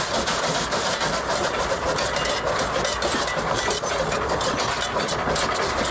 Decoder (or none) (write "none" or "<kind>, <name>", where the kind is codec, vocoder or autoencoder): none